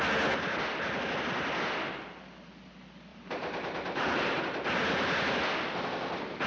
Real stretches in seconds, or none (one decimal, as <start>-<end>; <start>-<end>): 0.0-3.1; 4.4-6.5